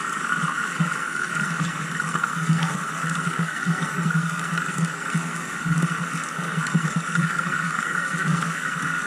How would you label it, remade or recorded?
remade